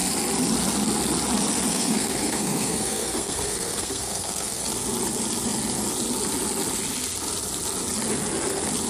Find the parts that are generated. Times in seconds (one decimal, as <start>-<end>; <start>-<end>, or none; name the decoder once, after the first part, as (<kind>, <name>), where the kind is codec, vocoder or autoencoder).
1.7-4.6 (codec, SNAC)